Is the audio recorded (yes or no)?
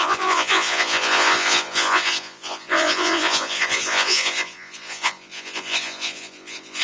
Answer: no